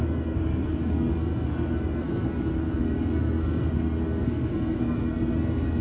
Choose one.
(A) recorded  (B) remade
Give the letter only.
B